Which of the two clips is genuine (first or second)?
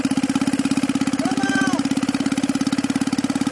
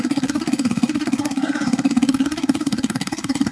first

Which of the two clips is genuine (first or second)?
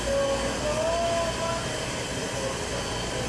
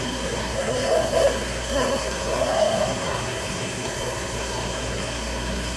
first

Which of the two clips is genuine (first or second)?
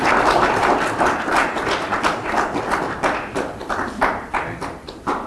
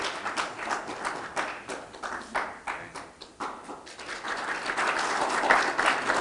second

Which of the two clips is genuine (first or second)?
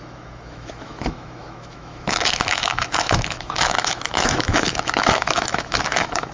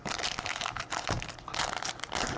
second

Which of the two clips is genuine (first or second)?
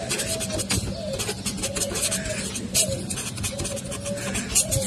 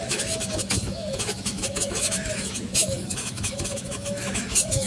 first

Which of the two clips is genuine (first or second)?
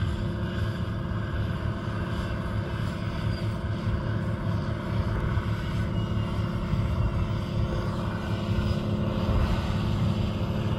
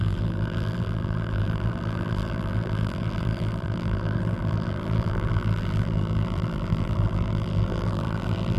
first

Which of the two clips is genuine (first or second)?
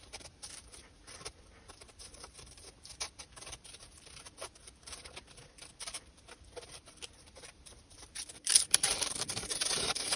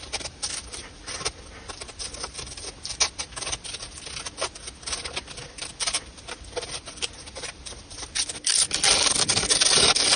second